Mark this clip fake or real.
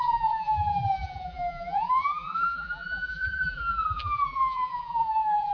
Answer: fake